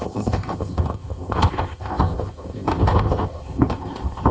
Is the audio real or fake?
fake